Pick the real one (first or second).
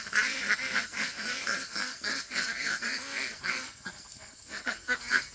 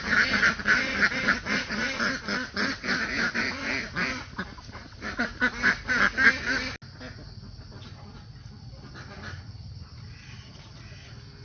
second